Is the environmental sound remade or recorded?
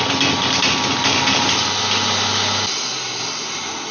recorded